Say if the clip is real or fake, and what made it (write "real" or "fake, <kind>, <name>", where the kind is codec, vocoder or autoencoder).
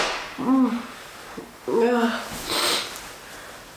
real